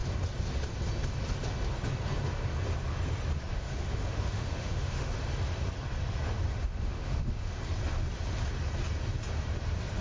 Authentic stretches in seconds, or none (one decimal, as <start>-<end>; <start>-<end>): 0.0-3.5; 5.1-6.6; 7.6-10.0